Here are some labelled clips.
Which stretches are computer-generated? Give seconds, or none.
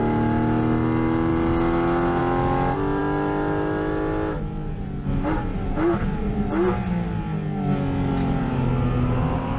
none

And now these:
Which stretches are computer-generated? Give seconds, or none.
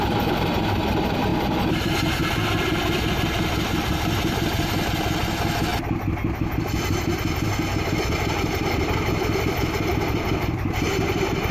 0.0-1.3 (vocoder, BigVGAN v2); 1.8-2.2; 3.6-5.7; 6.6-7.1; 7.9-11.5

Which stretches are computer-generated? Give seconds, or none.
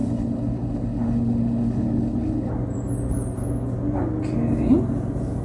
0.0-2.5 (codec, HILCodec)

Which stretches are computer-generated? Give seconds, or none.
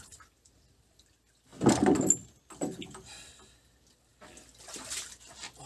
none